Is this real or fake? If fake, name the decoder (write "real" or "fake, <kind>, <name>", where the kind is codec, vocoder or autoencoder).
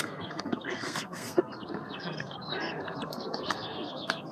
fake, codec, SNAC